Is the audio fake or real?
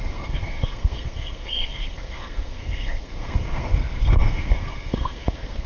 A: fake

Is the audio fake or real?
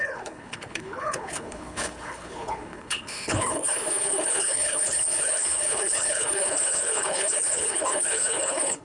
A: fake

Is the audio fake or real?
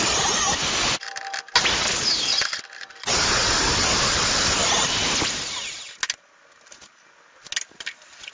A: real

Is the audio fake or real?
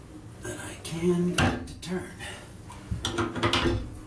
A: real